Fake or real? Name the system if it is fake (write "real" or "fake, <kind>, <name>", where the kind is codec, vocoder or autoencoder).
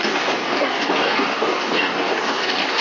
fake, codec, DAC